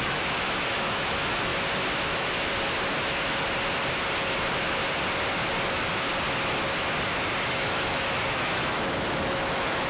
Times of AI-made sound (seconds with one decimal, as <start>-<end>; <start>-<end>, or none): 0.0-1.5; 2.1-2.5; 4.3-4.8; 5.6-6.1; 7.5-9.9